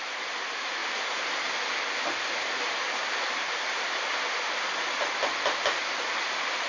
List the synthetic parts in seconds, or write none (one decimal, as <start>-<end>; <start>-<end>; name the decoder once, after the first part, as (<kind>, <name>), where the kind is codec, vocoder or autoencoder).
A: none